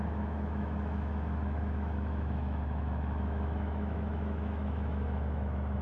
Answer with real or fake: fake